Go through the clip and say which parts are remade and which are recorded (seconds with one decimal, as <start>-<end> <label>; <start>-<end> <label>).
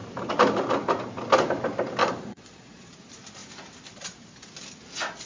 0.0-2.0 recorded; 2.0-2.9 remade; 2.9-5.3 recorded